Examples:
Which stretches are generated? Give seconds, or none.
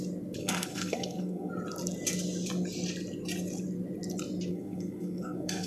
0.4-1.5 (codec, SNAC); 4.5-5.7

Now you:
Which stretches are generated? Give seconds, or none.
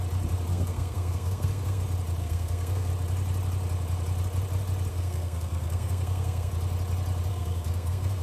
0.5-1.8 (codec, SNAC); 2.2-2.9; 4.9-6.5; 7.3-8.2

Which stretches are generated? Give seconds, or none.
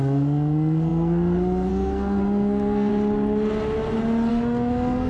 0.0-2.9 (codec, SNAC); 4.3-5.1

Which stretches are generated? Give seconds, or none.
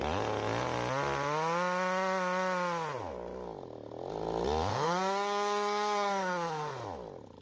4.7-6.7 (codec, SNAC)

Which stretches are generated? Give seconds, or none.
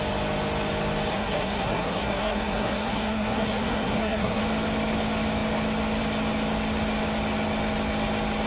1.1-4.4 (codec, SNAC)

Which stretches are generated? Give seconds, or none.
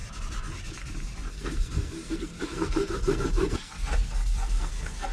1.3-5.1 (codec, SNAC)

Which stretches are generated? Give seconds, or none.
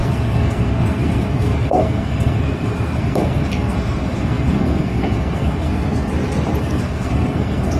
0.0-6.1 (codec, SNAC); 6.6-7.8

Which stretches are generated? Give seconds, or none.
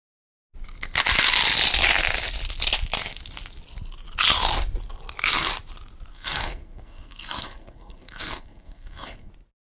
6.1-9.3 (codec, SNAC)